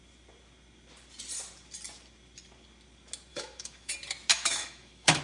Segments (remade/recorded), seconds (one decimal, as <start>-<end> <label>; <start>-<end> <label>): 0.0-3.3 recorded; 3.3-3.9 remade; 3.9-4.3 recorded; 4.3-5.2 remade